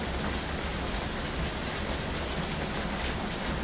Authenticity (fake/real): real